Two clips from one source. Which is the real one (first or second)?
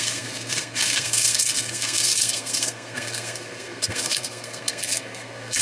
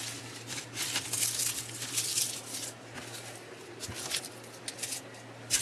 second